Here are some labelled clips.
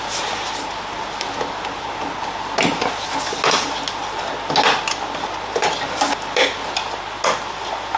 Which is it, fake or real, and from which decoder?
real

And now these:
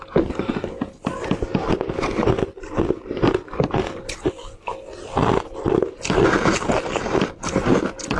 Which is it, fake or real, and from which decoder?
real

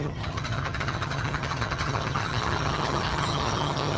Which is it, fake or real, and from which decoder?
fake, vocoder, HiFi-GAN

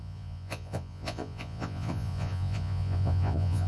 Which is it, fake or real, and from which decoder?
fake, vocoder, Vocos